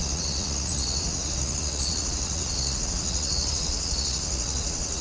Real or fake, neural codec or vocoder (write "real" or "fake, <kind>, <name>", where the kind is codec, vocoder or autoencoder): fake, vocoder, Vocos